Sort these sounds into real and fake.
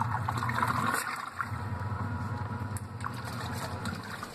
real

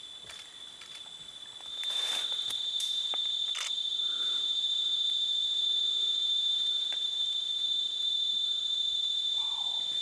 real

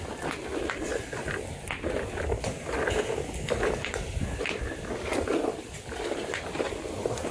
real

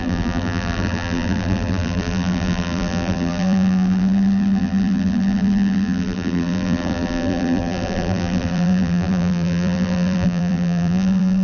fake